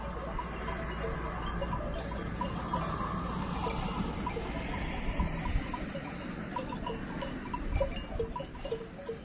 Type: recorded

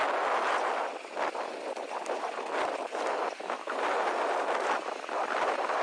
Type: recorded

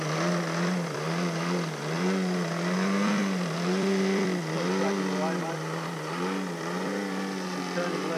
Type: remade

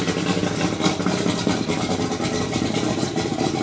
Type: recorded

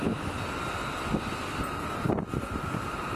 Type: remade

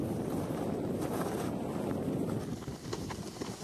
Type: recorded